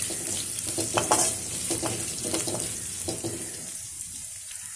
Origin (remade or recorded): recorded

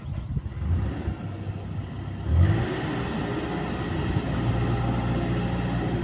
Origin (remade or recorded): recorded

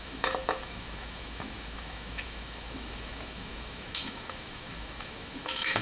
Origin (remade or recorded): remade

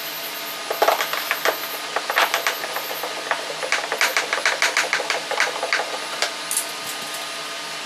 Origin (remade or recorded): recorded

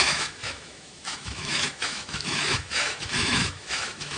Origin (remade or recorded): remade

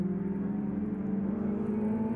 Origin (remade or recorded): recorded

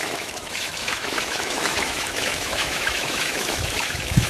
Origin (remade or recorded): remade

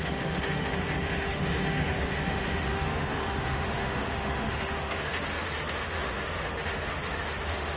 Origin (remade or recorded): remade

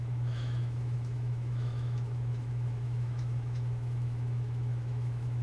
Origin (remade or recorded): remade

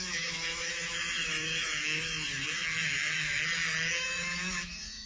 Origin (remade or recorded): remade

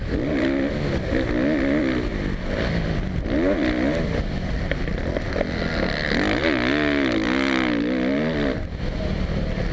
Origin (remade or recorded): recorded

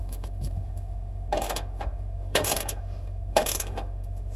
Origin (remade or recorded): remade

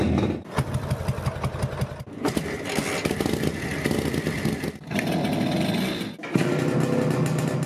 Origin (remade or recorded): recorded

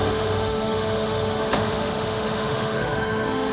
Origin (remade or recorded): remade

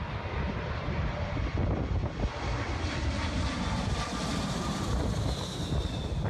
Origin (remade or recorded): recorded